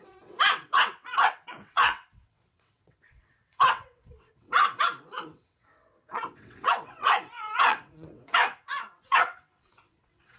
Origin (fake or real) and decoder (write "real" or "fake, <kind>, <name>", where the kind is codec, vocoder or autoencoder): fake, vocoder, WaveNeXt